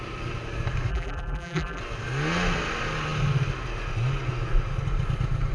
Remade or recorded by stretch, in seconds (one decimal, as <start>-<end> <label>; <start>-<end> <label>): 0.0-0.9 recorded; 0.9-1.8 remade; 1.8-5.5 recorded